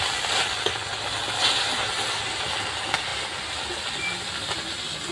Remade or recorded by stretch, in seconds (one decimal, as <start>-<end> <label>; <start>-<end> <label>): 0.0-5.1 recorded